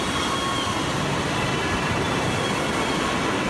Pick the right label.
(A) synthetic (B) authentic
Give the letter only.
B